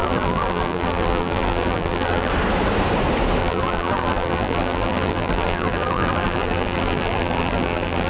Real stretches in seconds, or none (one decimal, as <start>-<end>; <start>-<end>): 2.3-3.4